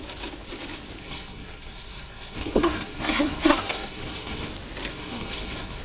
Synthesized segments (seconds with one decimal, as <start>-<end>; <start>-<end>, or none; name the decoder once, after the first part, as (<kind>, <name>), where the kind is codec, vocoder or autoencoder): 1.0-4.5 (codec, SNAC); 4.9-5.8